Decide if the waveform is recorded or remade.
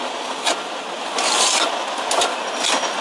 recorded